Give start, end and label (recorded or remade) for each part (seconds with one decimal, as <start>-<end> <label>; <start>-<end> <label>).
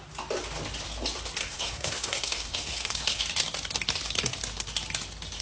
0.0-1.4 recorded; 1.4-3.2 remade; 3.2-5.4 recorded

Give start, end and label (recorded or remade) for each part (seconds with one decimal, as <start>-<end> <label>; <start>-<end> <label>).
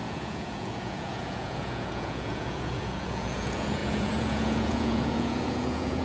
0.0-6.0 remade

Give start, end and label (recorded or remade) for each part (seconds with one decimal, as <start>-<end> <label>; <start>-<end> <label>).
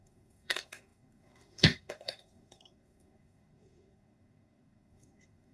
0.0-5.5 remade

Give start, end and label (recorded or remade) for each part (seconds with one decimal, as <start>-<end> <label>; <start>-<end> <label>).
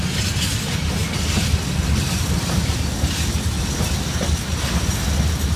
0.0-5.6 recorded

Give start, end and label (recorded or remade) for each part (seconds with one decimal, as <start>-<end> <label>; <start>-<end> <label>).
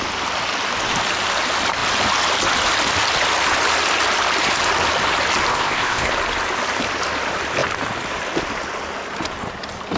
0.0-5.5 recorded; 5.5-6.1 remade; 6.1-10.0 recorded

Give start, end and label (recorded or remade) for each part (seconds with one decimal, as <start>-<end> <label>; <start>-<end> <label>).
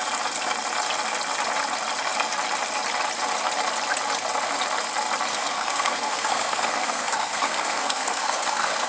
0.0-5.3 recorded; 5.3-8.9 remade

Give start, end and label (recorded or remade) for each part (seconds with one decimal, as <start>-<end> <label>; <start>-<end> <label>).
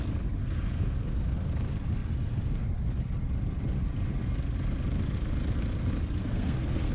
0.0-0.4 recorded; 0.4-1.5 remade; 1.5-6.2 recorded; 6.2-6.9 remade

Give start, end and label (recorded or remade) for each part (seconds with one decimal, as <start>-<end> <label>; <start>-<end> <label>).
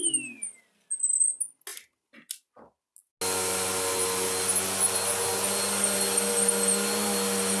0.0-7.6 recorded